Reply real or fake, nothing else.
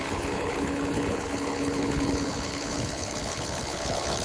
fake